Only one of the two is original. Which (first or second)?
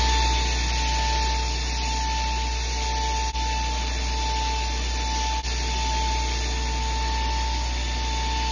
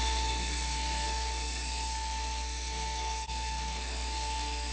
first